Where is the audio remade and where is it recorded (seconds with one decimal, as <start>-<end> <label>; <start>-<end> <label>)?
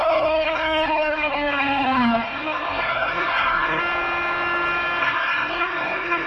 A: 0.0-3.8 remade; 3.8-5.0 recorded; 5.0-6.3 remade